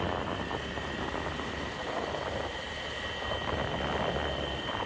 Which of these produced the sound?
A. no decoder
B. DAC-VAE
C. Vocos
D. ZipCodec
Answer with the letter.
A